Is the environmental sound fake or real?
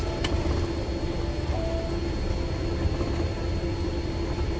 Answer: real